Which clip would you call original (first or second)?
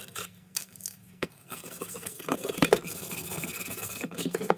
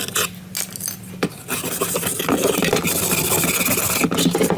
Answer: second